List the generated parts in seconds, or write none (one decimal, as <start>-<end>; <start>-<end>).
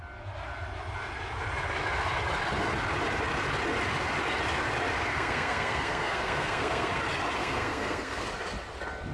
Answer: 5.1-7.0; 7.4-8.2